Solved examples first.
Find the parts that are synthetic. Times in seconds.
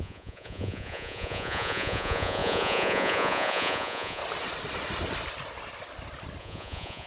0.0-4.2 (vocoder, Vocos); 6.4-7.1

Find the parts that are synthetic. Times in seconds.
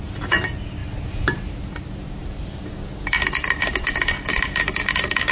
0.8-1.4 (vocoder, BigVGAN v2); 2.2-4.7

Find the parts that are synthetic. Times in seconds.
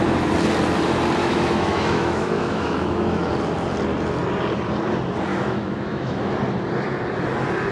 1.2-3.3 (autoencoder, DAC-VAE); 5.3-6.3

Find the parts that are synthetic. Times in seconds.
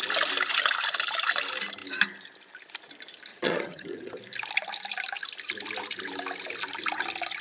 3.3-4.2 (vocoder, HiFi-GAN)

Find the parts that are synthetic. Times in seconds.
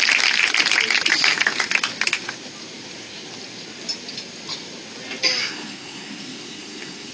5.4-7.1 (codec, SNAC)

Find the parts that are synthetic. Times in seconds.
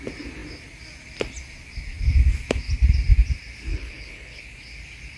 3.7-4.4 (codec, HILCodec)